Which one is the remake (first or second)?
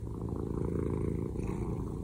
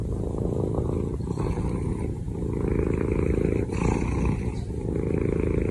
second